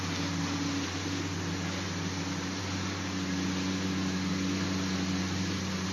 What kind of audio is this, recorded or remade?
recorded